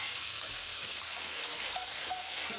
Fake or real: fake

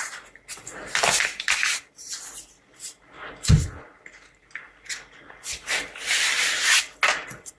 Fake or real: real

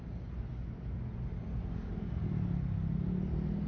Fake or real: real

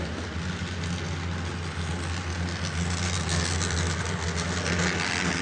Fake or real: real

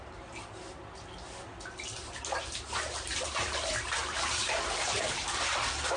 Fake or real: real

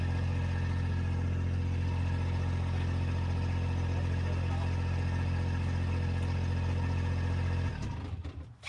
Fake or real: real